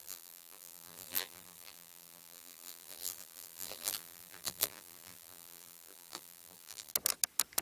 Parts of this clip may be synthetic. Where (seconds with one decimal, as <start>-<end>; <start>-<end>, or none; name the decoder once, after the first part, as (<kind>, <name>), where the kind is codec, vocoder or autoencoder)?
0.0-6.9 (vocoder, BigVGAN v2)